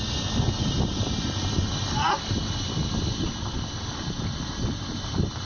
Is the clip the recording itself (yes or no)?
yes